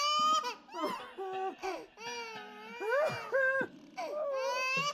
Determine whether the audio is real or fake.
real